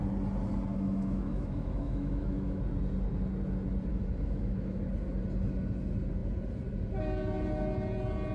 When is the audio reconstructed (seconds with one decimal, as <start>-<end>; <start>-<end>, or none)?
0.7-2.6; 3.9-4.8